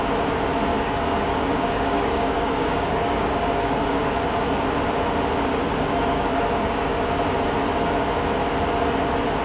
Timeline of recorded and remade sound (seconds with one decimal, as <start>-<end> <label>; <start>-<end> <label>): 0.0-0.7 recorded; 0.7-4.1 remade; 4.1-5.5 recorded; 5.5-7.0 remade; 7.0-9.4 recorded